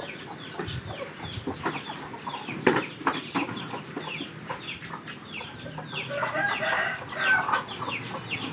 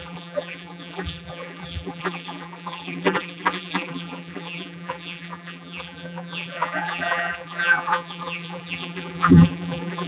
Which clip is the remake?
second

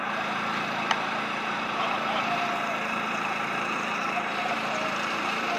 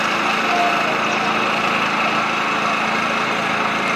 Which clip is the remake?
first